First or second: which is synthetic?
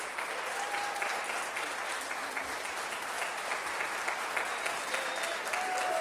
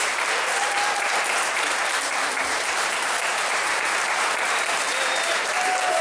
second